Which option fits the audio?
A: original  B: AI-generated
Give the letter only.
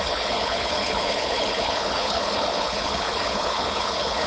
B